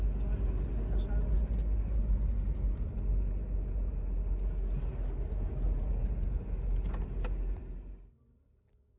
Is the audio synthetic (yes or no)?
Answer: no